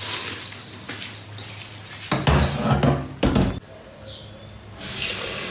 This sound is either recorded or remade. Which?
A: recorded